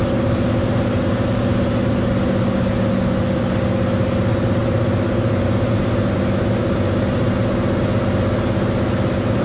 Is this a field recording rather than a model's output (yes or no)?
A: yes